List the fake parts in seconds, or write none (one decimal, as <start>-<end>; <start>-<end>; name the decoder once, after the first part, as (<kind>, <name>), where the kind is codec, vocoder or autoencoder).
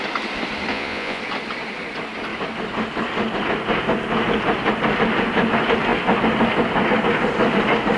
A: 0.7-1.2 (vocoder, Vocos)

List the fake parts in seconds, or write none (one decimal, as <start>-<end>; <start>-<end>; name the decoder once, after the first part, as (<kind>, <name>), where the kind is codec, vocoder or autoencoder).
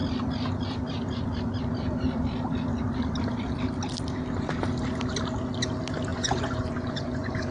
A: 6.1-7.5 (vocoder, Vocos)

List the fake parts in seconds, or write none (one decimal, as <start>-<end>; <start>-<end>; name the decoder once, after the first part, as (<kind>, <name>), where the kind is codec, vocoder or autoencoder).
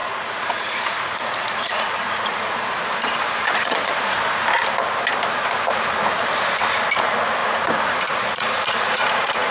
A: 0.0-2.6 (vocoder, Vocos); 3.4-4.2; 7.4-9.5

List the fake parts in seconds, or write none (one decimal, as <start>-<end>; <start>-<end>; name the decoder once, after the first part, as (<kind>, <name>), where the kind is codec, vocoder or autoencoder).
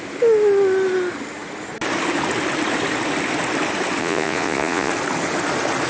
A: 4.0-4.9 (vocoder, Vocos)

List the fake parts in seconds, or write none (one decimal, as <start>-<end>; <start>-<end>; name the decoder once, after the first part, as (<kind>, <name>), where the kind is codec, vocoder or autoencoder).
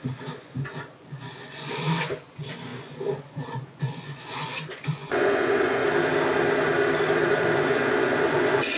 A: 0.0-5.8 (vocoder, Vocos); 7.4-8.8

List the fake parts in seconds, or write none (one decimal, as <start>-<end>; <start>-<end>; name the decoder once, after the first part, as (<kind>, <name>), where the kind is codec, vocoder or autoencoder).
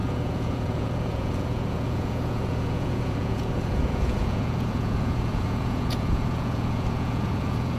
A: 0.0-7.8 (vocoder, Vocos)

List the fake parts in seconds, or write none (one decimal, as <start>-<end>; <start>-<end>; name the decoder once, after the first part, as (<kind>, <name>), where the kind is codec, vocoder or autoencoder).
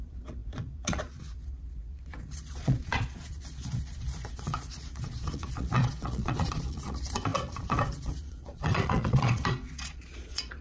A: 0.0-10.6 (vocoder, Vocos)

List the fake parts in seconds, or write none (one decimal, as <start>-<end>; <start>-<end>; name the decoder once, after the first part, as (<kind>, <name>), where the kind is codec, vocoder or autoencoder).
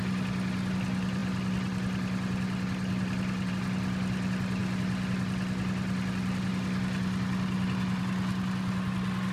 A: none